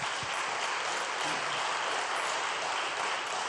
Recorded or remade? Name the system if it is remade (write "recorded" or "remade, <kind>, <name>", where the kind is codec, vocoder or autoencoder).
recorded